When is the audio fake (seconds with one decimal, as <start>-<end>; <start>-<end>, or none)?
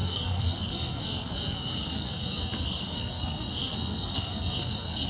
0.0-5.1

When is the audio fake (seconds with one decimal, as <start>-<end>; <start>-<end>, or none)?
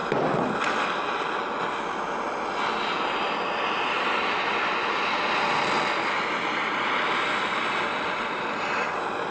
3.4-9.3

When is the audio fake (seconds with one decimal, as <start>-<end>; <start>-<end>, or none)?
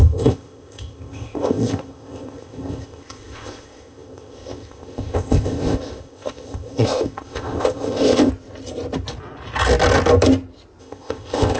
0.0-8.3; 10.8-11.6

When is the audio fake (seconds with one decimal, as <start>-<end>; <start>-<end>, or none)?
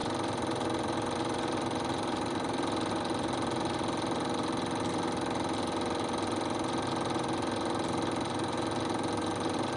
0.0-2.9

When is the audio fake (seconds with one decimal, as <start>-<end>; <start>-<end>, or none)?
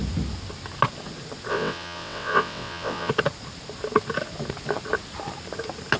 1.5-3.1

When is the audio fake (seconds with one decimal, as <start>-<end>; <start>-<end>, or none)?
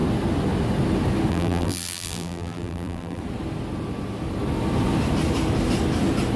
1.3-3.2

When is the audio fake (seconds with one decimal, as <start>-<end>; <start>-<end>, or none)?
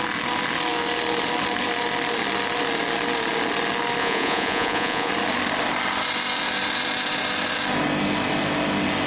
4.0-5.1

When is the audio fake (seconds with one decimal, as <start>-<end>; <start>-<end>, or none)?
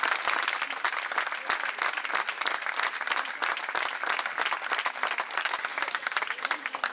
5.7-6.3